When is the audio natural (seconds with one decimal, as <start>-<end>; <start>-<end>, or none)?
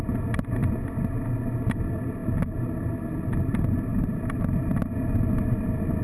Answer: 0.0-6.0